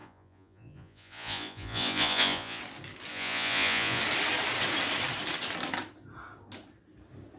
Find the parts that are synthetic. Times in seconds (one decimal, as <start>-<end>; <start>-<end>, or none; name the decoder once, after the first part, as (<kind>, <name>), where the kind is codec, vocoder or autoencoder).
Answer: 0.0-2.6 (vocoder, Vocos); 3.1-4.0